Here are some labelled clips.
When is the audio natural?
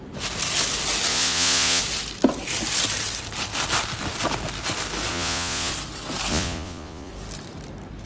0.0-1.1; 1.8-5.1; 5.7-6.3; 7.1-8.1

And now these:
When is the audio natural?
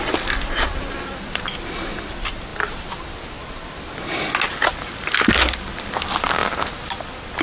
0.0-7.4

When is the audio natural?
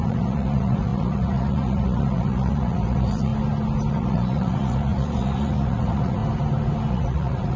3.3-3.9; 6.2-6.9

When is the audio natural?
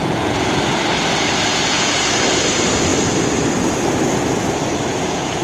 0.6-1.5; 2.1-4.9